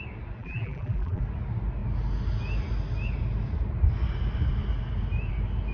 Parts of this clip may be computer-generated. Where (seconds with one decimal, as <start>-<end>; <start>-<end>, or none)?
0.4-1.2